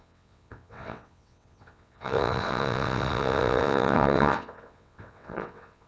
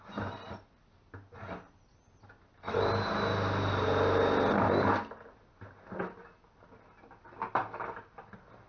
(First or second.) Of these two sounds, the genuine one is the second